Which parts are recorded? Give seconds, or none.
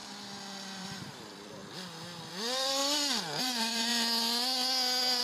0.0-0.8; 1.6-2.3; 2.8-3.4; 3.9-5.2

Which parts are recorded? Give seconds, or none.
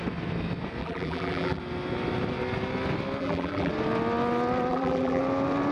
0.0-0.8; 1.6-3.2; 3.7-4.7; 5.2-5.7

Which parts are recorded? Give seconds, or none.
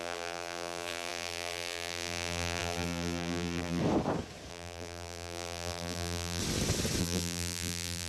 3.8-4.5; 6.4-7.0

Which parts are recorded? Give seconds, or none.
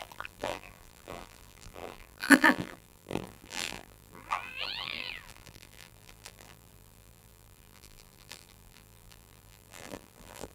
none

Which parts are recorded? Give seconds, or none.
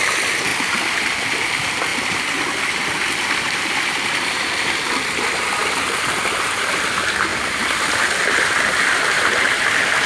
0.5-1.2; 5.6-6.6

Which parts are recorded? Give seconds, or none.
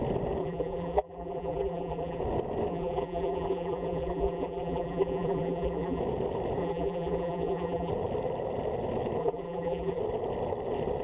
0.0-0.4; 2.2-2.7; 6.0-6.6; 7.9-9.2; 10.0-11.0